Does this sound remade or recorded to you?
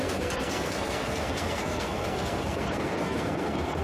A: remade